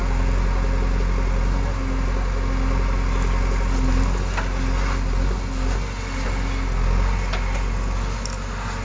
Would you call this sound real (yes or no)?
yes